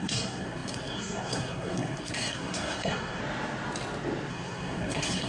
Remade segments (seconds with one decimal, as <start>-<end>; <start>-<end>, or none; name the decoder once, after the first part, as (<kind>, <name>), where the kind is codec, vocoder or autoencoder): 0.0-3.2 (codec, SNAC); 4.3-5.3